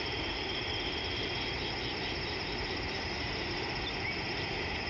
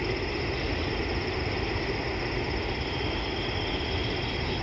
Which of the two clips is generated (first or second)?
first